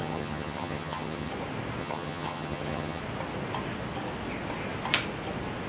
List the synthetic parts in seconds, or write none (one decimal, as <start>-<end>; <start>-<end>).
0.0-1.3; 1.8-3.0